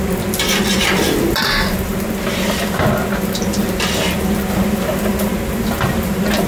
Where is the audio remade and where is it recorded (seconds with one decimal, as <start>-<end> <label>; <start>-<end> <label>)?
0.0-6.5 recorded